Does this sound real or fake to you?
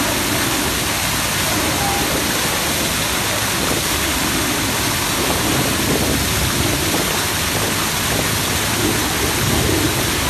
real